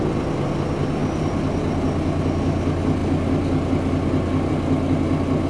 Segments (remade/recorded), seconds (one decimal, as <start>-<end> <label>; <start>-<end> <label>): 0.0-5.5 recorded